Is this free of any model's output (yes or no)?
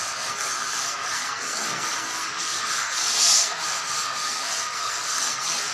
no